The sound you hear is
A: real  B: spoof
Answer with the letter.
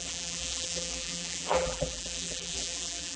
B